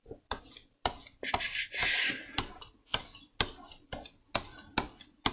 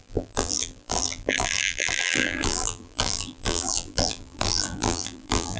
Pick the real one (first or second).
first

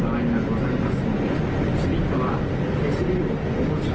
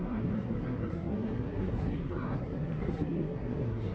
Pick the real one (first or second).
first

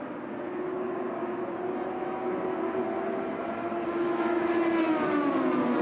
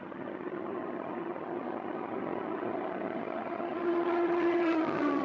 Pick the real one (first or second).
first